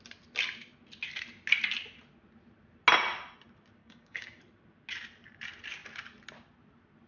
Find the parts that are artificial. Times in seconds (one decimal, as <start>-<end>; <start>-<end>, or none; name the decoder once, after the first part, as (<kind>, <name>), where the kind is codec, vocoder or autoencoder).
3.8-4.4 (codec, DAC)